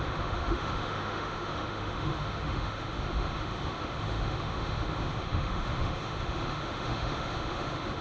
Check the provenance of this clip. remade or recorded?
remade